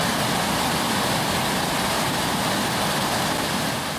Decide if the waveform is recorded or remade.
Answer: recorded